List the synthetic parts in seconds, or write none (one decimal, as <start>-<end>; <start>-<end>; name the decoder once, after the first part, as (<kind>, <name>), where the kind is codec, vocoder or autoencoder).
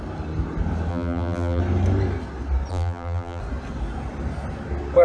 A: 0.9-1.6 (vocoder, BigVGAN v2); 2.7-3.4